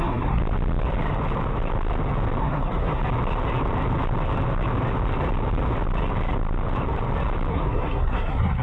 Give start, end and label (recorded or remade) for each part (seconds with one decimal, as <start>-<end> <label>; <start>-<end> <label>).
0.0-0.4 remade; 0.4-2.4 recorded; 2.4-3.0 remade; 3.0-7.5 recorded; 7.5-8.6 remade